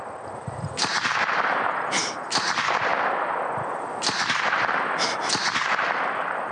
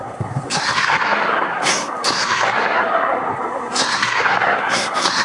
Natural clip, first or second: first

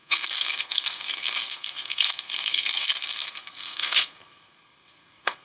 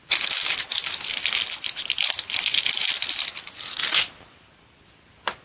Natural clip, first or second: second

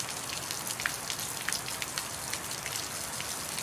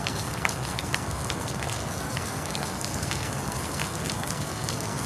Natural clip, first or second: first